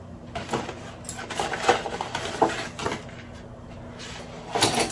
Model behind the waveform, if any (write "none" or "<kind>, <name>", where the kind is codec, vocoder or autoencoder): none